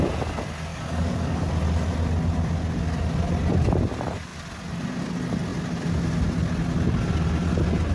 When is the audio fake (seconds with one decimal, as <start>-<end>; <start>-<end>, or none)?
0.7-1.5